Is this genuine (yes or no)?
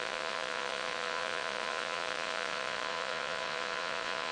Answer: no